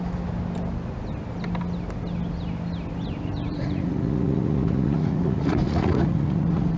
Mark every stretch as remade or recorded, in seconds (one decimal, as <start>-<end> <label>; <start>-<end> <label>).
0.0-3.5 recorded; 3.5-6.8 remade